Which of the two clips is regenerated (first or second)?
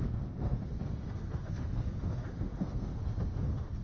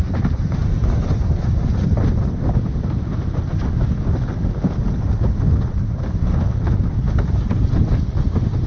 first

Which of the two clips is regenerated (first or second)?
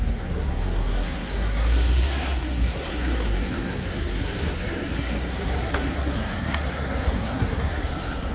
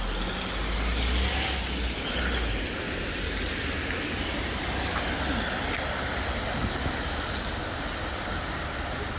first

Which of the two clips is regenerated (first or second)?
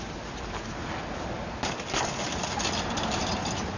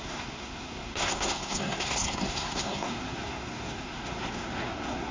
second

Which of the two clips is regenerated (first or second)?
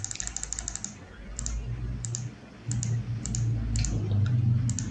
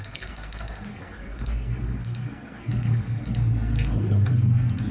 second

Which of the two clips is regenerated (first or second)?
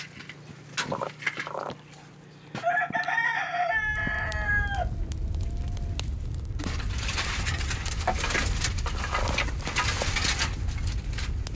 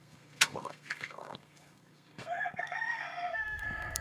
second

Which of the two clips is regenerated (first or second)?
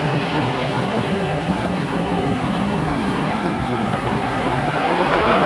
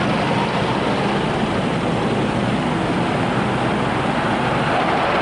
first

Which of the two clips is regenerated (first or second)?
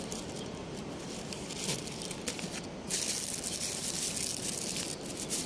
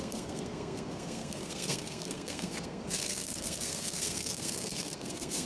second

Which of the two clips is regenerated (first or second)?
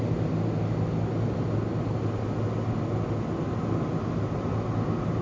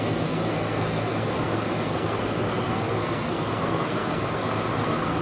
second